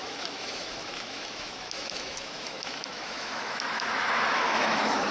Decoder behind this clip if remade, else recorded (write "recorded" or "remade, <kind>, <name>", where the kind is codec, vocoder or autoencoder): remade, autoencoder, DAC-VAE